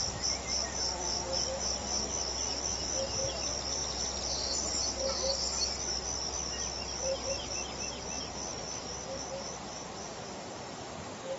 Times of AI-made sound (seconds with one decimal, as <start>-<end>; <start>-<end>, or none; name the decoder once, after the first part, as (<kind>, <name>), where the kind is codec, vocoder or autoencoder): none